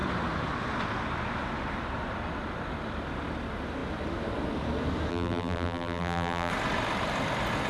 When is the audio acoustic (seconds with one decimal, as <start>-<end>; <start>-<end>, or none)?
0.0-5.1; 6.5-7.7